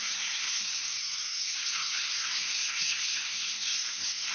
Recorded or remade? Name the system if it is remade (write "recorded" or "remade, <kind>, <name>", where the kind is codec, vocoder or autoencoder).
remade, codec, SNAC